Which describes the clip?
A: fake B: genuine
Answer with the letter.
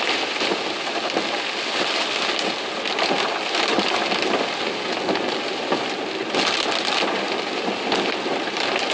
B